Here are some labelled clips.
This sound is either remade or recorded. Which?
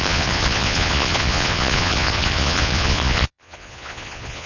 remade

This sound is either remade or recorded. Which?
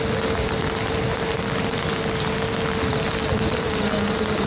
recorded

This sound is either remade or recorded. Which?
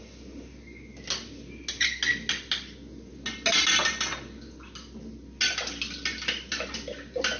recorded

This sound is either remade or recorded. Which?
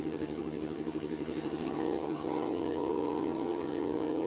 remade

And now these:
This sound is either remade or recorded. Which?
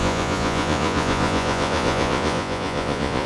remade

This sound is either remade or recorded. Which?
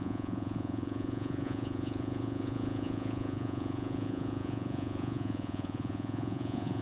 remade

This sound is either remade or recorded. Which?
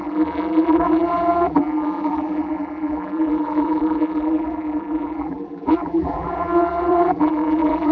remade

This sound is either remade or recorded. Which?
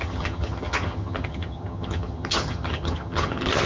remade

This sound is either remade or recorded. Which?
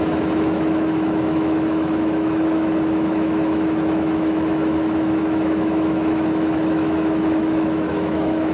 remade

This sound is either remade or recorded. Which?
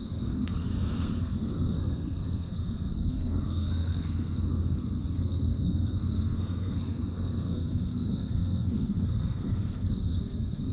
remade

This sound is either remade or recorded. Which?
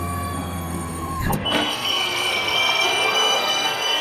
remade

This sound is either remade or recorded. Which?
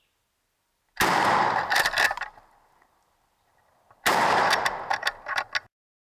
recorded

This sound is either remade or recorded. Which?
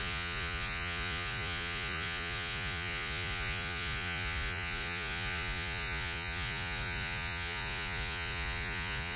remade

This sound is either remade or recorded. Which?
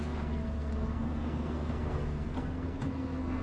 remade